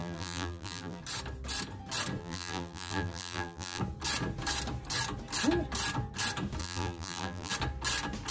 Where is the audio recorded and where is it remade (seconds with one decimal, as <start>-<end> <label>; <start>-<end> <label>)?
0.0-1.0 remade; 1.0-2.2 recorded; 2.2-3.8 remade; 3.8-6.6 recorded; 6.6-7.5 remade; 7.5-8.3 recorded